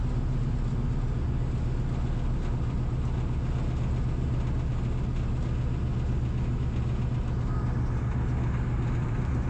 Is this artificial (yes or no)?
no